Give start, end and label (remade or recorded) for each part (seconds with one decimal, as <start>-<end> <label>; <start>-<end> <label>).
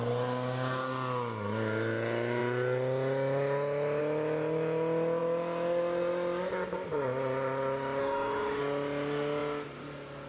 0.0-8.0 recorded; 8.0-8.6 remade; 8.6-10.3 recorded